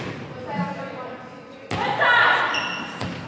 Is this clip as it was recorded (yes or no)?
yes